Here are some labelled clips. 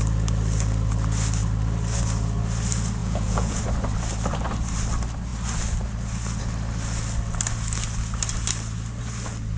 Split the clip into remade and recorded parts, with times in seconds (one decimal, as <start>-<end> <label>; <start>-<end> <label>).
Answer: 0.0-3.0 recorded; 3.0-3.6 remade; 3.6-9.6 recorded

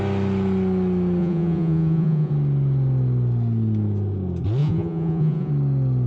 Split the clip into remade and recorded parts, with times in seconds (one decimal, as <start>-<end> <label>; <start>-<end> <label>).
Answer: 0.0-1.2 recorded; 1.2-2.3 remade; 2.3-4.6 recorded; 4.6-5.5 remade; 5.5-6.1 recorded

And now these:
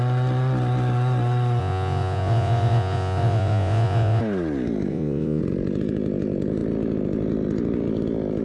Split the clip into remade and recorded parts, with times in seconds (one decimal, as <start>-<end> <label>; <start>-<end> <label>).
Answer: 0.0-1.6 recorded; 1.6-4.2 remade; 4.2-4.9 recorded; 4.9-5.4 remade; 5.4-8.4 recorded

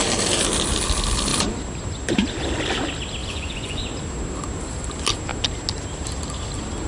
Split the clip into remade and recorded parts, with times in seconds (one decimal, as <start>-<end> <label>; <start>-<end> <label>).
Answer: 0.0-3.2 recorded; 3.2-3.8 remade; 3.8-6.9 recorded

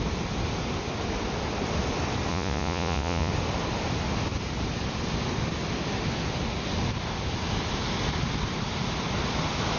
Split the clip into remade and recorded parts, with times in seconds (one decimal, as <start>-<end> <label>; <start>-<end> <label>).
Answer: 0.0-2.3 recorded; 2.3-3.3 remade; 3.3-9.8 recorded

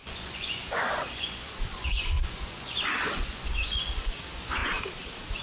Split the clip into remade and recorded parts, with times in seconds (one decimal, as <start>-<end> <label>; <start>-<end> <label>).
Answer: 0.0-4.6 remade; 4.6-5.4 recorded

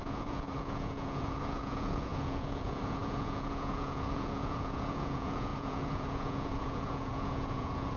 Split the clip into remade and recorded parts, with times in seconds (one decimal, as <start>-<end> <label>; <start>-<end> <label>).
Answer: 0.0-8.0 remade

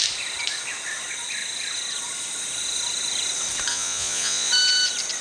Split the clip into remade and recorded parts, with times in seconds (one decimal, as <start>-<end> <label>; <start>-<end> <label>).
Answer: 0.0-3.7 recorded; 3.7-4.5 remade; 4.5-5.2 recorded